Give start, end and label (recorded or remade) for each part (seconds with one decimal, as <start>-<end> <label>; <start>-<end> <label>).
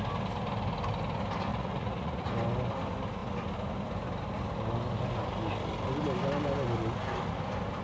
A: 0.0-1.5 recorded; 1.5-2.3 remade; 2.3-7.8 recorded